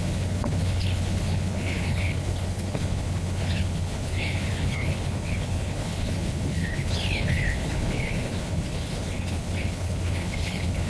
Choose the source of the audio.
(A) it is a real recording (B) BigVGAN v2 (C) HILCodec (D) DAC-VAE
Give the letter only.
C